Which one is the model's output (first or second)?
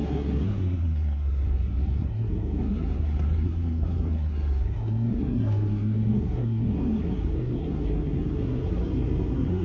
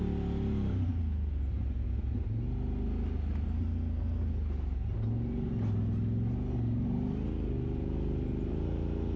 first